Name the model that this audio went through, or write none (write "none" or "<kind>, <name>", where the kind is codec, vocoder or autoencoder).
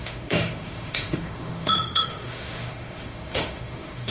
autoencoder, DAC-VAE